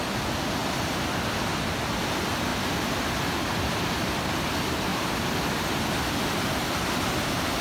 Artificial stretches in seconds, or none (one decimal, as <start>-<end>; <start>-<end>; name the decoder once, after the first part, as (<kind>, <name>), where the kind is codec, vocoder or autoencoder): 4.9-5.9 (vocoder, BigVGAN v2)

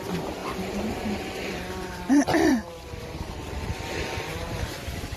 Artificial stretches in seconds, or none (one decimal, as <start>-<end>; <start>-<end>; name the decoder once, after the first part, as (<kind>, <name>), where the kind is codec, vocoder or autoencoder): 0.4-3.5 (vocoder, BigVGAN v2); 4.3-5.2

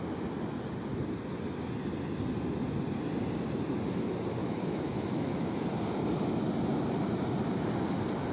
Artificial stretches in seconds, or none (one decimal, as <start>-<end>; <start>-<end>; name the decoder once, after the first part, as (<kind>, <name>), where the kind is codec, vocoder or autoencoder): 4.4-5.5 (autoencoder, DAC-VAE)

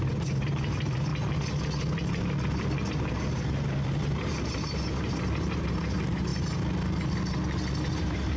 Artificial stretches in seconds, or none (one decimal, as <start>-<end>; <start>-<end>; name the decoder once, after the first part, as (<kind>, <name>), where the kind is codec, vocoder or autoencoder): 0.0-1.1 (vocoder, BigVGAN v2); 2.9-6.3; 7.9-8.4

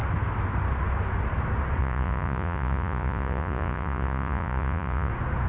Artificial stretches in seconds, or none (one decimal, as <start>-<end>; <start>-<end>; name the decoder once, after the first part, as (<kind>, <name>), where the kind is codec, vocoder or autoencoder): 1.8-5.1 (vocoder, Vocos)

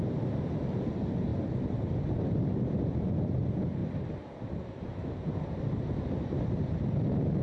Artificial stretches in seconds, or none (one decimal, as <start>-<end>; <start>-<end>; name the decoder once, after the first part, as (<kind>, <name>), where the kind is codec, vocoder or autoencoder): 1.3-2.9 (vocoder, BigVGAN v2); 3.8-6.8

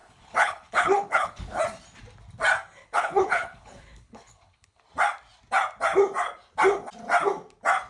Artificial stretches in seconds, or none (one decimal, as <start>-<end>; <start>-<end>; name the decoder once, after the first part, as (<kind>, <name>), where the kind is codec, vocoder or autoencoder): 0.0-1.6 (codec, HILCodec); 2.8-4.8

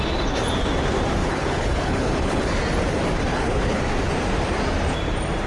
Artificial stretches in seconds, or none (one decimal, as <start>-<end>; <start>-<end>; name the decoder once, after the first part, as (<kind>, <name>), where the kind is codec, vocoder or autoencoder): 1.2-2.6 (codec, HILCodec); 3.2-3.8